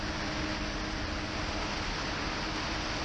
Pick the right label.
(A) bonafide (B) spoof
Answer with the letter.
A